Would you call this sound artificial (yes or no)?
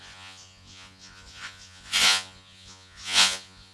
yes